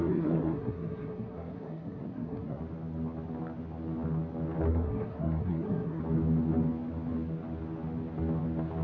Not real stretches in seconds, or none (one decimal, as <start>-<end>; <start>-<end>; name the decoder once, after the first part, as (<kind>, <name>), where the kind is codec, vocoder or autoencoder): 0.0-2.6 (codec, SNAC); 4.7-6.0